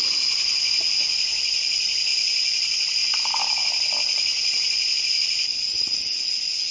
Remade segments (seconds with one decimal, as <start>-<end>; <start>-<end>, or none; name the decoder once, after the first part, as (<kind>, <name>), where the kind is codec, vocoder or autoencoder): none

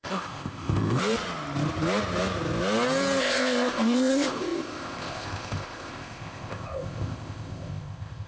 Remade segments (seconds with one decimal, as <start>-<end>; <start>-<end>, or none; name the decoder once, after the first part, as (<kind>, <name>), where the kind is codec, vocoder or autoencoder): 0.0-1.0 (codec, ZipCodec); 3.2-8.3

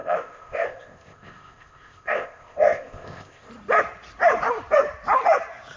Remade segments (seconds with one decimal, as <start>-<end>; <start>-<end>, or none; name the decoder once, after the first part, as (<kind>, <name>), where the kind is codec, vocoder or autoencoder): 0.0-3.5 (codec, ZipCodec)

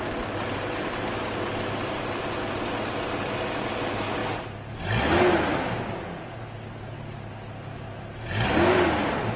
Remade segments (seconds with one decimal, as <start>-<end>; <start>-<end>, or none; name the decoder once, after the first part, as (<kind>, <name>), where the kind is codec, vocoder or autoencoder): none

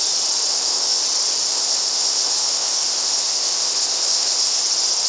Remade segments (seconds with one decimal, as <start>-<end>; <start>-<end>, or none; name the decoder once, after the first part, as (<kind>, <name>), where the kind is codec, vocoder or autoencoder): 0.5-1.0 (codec, ZipCodec); 1.5-4.6

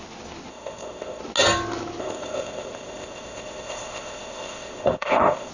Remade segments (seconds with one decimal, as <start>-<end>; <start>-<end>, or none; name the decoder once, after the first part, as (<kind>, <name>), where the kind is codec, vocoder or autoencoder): 0.5-1.2 (codec, ZipCodec); 2.0-5.5